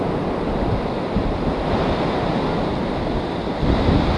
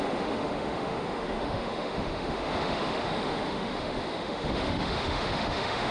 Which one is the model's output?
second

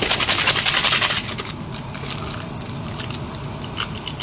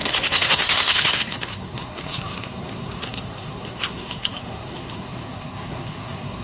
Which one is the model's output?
second